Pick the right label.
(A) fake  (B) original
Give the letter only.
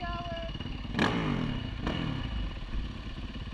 B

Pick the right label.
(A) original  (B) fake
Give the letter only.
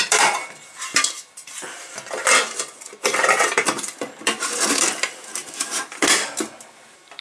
B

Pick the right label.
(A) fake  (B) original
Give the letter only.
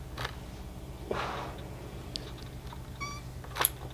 B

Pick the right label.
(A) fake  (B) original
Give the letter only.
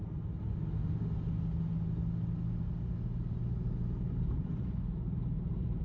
B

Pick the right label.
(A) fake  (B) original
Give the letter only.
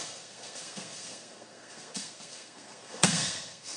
A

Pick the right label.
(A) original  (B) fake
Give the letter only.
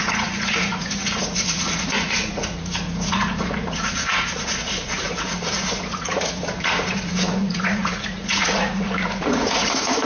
B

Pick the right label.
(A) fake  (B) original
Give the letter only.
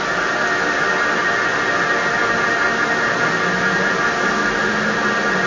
B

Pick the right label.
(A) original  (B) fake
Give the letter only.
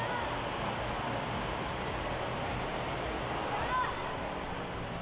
A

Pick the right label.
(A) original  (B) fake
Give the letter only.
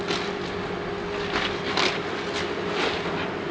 A